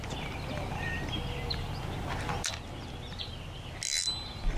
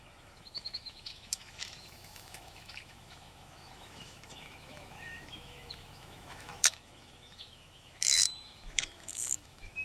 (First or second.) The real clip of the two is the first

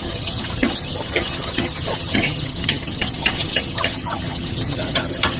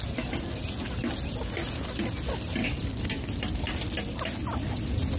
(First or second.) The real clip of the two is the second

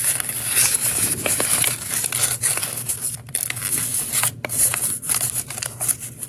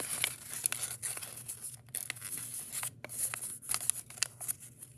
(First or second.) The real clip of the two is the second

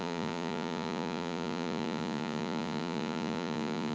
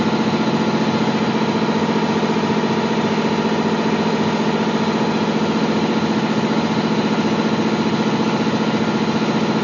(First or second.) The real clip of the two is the second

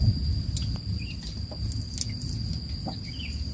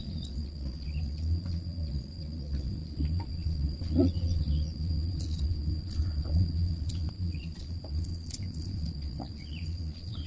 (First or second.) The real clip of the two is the first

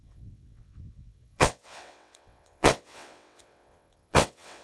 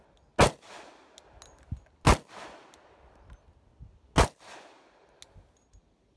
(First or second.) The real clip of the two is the second